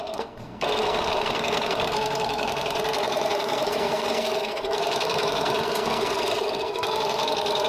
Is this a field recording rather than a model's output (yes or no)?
no